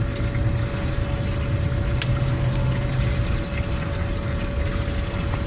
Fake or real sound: real